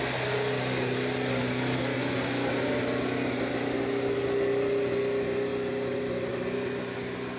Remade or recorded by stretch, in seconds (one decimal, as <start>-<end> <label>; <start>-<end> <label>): 0.0-7.4 recorded